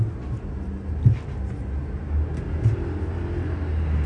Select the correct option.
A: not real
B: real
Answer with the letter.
B